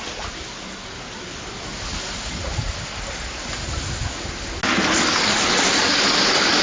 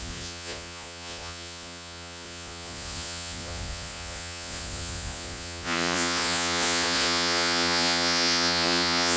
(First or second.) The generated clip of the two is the second